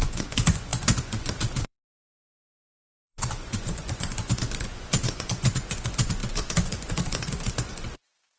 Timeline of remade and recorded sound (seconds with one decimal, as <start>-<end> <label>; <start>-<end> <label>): 0.0-8.4 remade